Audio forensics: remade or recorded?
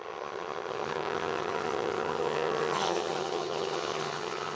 remade